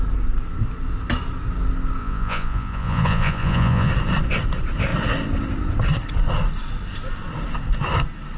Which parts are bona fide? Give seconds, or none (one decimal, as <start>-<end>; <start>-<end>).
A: 0.0-2.0; 3.9-8.4